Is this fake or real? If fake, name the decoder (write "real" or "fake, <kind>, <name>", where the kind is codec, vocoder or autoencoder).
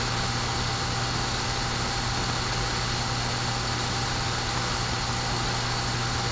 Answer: real